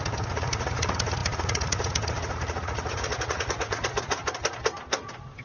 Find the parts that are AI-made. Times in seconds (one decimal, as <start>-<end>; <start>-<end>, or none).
0.0-4.2; 5.0-5.4